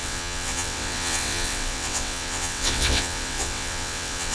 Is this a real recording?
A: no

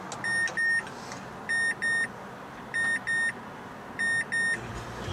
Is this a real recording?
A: yes